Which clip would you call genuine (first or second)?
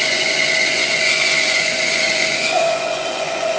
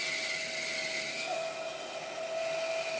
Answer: second